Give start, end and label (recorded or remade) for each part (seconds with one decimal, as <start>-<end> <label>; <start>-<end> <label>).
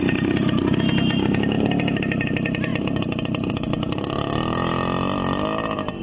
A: 0.0-6.0 recorded